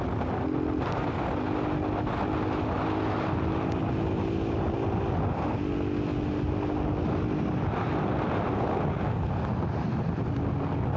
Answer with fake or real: real